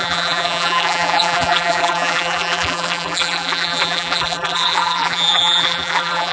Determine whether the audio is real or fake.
fake